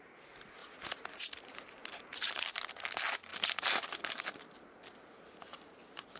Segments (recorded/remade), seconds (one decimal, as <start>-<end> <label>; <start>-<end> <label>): 0.0-0.6 recorded; 0.6-2.5 remade; 2.5-3.3 recorded; 3.3-4.4 remade; 4.4-6.2 recorded